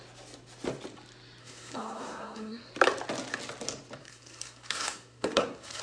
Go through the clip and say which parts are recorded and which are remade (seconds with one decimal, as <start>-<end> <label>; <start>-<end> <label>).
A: 0.0-1.4 recorded; 1.4-2.7 remade; 2.7-4.0 recorded; 4.0-5.8 remade